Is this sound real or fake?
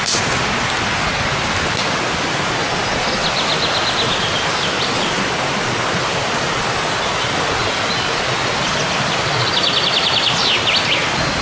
real